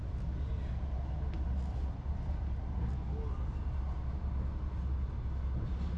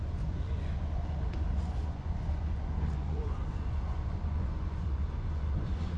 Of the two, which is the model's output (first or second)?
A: second